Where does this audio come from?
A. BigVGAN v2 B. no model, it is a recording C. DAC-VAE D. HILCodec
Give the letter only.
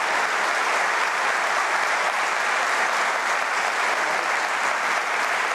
B